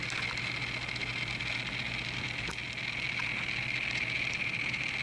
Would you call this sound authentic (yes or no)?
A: yes